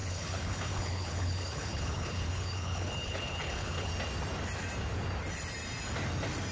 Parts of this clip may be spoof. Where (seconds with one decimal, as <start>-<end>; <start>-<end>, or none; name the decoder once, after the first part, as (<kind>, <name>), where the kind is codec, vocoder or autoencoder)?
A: 0.0-3.9 (codec, HILCodec)